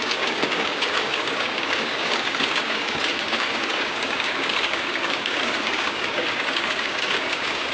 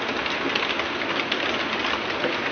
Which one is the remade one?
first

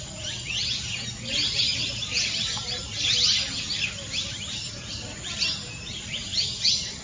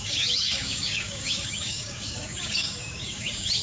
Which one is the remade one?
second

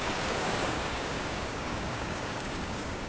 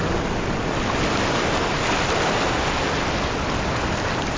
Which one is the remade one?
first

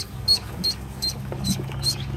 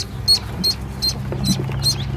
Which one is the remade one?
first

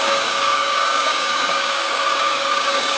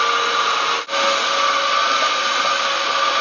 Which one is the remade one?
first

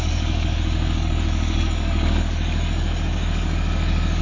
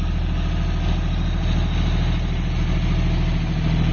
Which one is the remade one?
first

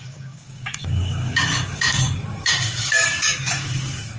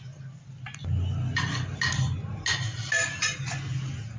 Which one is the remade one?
first